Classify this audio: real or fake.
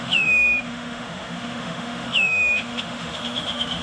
fake